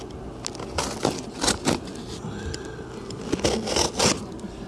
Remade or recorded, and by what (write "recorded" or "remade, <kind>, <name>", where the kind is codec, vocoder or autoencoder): recorded